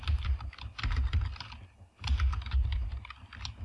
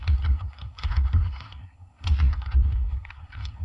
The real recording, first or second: first